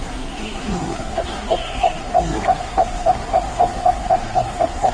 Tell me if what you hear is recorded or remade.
remade